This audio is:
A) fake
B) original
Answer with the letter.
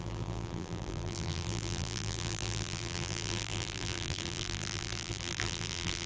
A